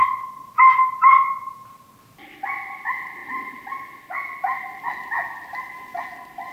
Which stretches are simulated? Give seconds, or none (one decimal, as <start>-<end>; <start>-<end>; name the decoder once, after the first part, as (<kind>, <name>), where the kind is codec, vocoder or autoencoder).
none